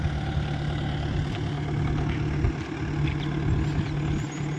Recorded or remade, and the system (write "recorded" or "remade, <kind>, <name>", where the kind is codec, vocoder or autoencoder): recorded